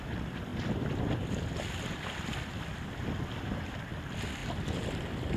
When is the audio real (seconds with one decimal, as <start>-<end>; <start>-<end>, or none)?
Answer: 0.0-4.4